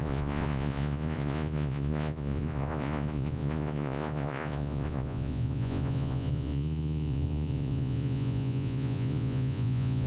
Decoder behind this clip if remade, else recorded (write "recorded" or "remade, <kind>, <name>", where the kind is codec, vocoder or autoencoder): remade, vocoder, Vocos